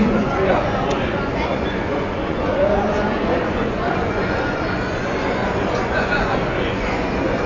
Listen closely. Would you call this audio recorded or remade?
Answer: remade